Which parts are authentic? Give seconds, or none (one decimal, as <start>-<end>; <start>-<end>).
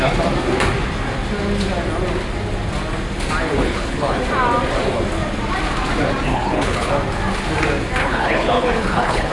0.0-3.5; 4.2-6.3; 6.9-8.0